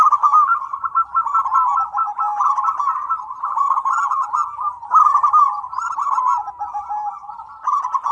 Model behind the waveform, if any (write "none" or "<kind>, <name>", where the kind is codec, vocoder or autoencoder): none